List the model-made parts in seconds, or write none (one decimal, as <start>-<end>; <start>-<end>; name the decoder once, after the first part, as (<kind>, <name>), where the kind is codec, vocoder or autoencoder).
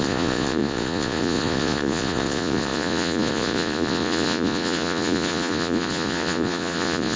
0.0-7.2 (vocoder, Vocos)